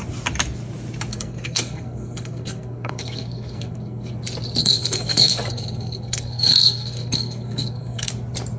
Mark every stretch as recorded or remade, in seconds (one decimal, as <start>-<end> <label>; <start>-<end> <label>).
0.0-1.1 recorded; 1.1-4.1 remade; 4.1-4.6 recorded; 4.6-8.1 remade; 8.1-8.6 recorded